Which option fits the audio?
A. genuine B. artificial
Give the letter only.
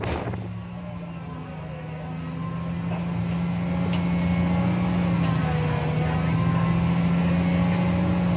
A